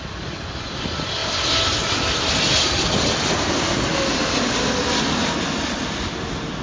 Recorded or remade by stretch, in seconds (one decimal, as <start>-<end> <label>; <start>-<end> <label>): 0.0-6.6 recorded